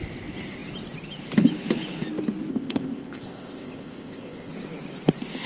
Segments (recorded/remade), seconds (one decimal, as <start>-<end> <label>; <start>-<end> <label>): 0.0-2.5 recorded; 2.5-4.5 remade; 4.5-5.5 recorded